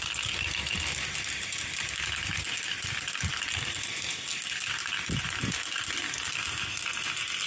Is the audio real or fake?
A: real